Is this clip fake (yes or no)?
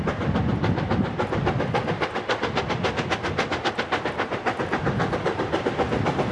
yes